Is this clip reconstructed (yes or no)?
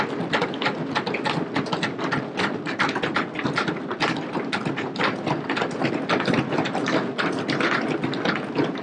no